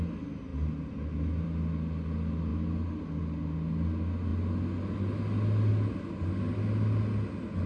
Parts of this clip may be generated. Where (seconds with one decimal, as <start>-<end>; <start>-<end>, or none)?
none